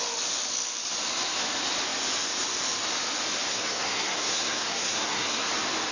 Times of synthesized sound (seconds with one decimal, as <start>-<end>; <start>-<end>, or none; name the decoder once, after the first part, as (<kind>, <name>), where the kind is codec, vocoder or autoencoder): 3.5-5.5 (codec, SNAC)